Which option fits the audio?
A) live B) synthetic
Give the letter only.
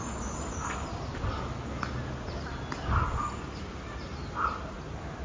A